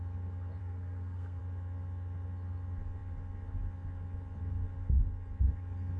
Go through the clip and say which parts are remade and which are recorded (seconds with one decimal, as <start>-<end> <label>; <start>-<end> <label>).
0.0-0.6 recorded; 0.6-1.4 remade; 1.4-6.0 recorded